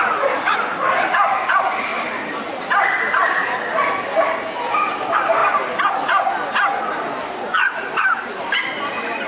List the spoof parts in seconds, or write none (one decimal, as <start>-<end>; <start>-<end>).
1.9-3.1; 5.4-5.9